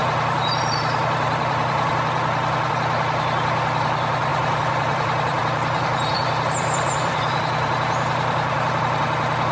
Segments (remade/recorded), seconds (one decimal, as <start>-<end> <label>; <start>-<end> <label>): 0.0-1.9 remade; 1.9-4.3 recorded; 4.3-8.8 remade; 8.8-9.5 recorded